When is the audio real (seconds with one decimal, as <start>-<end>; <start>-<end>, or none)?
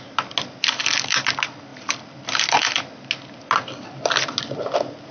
0.0-5.1